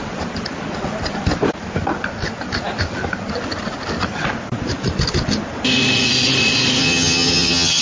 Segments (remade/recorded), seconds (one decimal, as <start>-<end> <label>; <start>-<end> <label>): 0.0-6.8 recorded; 6.8-7.8 remade